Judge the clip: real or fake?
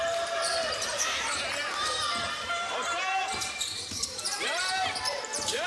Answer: fake